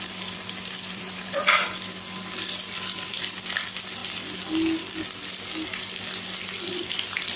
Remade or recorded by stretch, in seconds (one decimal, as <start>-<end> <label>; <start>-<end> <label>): 0.0-4.0 remade; 4.0-6.5 recorded; 6.5-7.4 remade